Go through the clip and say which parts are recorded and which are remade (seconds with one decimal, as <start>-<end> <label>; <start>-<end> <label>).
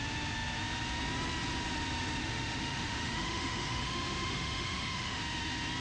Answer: 0.0-2.2 recorded; 2.2-5.2 remade; 5.2-5.8 recorded